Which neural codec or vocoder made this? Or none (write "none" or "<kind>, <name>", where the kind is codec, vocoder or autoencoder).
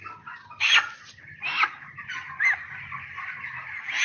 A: vocoder, BigVGAN v2